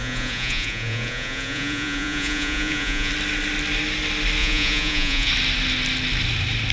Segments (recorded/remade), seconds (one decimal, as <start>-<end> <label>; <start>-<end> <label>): 0.0-3.1 remade; 3.1-4.4 recorded; 4.4-5.3 remade; 5.3-6.7 recorded